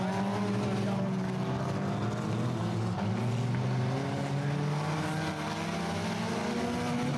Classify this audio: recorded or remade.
recorded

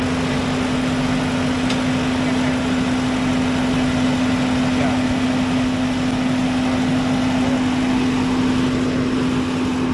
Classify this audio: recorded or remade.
recorded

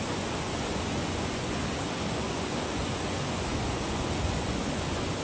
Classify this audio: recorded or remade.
remade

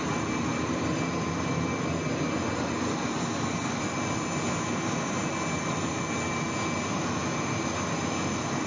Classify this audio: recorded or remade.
recorded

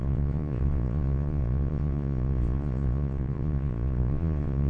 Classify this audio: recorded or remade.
remade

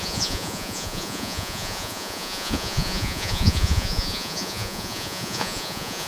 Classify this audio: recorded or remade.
remade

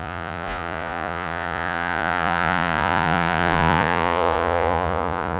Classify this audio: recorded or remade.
remade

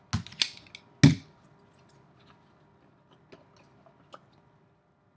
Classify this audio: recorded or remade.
recorded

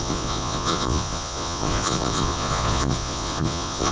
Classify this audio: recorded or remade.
remade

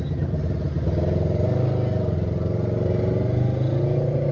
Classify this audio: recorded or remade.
recorded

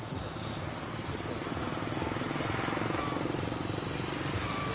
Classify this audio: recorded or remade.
recorded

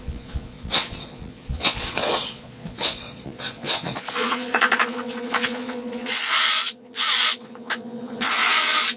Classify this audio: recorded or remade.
remade